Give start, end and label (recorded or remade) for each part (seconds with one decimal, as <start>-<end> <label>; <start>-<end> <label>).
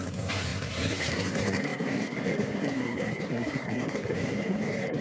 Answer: 0.0-5.0 remade